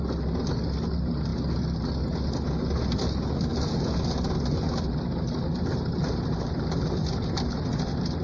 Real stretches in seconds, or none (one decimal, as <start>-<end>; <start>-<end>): 0.0-8.2